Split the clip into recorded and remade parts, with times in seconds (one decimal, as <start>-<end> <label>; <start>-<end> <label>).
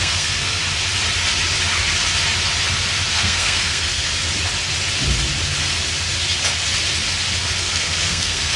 0.0-0.6 remade; 0.6-3.1 recorded; 3.1-4.1 remade; 4.1-7.6 recorded; 7.6-8.6 remade